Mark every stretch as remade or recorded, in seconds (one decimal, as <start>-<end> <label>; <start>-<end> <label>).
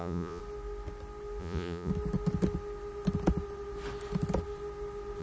0.0-0.4 remade; 0.4-1.4 recorded; 1.4-1.9 remade; 1.9-5.2 recorded